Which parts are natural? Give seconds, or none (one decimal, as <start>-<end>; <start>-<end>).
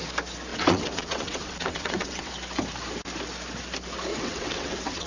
0.0-0.5; 2.3-4.1